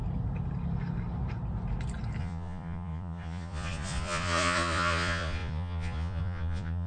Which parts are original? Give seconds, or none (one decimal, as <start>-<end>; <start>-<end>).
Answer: 0.0-2.2